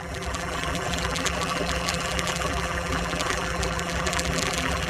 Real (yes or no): no